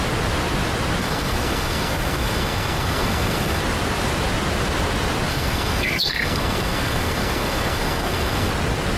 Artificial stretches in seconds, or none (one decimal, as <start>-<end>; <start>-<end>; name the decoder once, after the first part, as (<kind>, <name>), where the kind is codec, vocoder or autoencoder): 1.0-3.6 (codec, SNAC); 5.3-8.5